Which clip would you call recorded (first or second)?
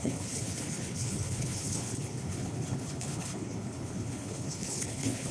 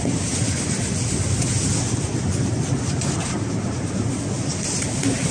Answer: second